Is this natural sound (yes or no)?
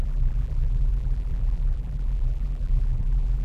no